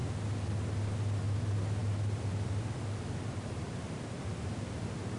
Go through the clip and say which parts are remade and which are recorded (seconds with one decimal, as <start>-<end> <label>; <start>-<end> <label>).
0.0-1.8 recorded; 1.8-4.4 remade; 4.4-5.2 recorded